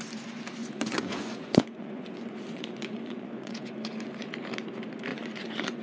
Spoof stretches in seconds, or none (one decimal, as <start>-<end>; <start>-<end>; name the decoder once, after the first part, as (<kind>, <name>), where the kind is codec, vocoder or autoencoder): 0.6-4.1 (vocoder, Vocos); 5.1-5.8